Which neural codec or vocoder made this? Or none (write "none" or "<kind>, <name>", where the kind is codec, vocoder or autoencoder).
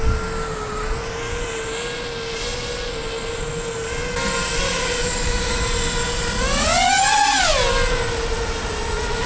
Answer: none